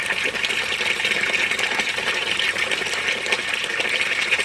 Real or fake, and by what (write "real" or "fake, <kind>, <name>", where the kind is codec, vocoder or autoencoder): real